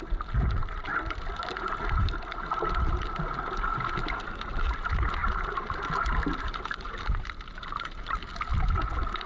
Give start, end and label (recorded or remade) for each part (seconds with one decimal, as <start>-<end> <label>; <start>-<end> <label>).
0.0-9.3 recorded